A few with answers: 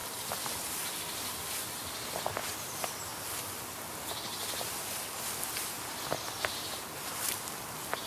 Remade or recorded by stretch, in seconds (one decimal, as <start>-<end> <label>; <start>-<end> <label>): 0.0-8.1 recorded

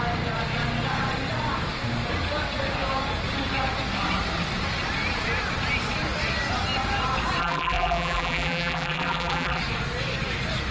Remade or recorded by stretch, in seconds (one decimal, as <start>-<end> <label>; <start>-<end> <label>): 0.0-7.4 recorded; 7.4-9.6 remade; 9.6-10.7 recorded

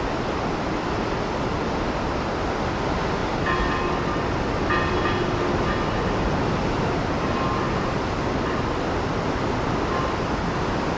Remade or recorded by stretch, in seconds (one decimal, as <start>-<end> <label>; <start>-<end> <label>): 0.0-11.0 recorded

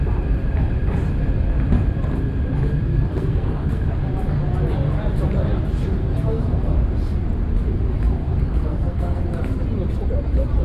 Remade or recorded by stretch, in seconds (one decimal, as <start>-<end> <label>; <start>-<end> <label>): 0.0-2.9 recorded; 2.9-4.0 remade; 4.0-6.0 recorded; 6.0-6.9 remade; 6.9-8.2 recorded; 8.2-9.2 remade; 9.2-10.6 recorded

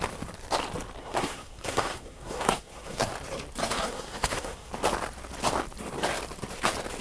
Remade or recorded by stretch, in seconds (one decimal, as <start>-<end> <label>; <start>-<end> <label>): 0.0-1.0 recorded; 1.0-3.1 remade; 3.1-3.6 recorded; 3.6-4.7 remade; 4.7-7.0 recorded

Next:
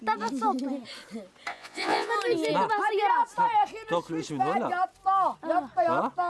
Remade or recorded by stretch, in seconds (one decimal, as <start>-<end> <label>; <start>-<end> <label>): 0.0-1.5 recorded; 1.5-2.1 remade; 2.1-6.3 recorded

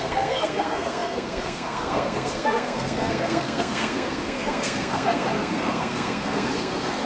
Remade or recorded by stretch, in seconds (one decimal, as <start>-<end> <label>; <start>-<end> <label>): 0.0-7.1 remade